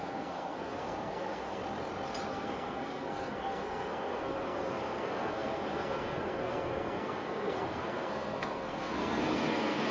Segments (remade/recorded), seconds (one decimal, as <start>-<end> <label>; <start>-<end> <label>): 0.0-1.6 remade; 1.6-2.3 recorded; 2.3-9.9 remade